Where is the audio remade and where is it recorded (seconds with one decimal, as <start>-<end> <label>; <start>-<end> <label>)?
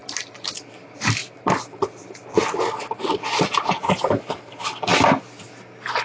0.0-4.9 remade; 4.9-6.0 recorded